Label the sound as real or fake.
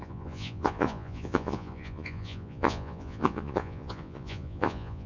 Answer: fake